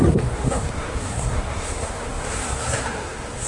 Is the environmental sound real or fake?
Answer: fake